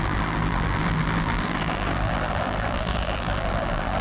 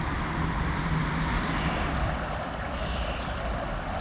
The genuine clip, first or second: second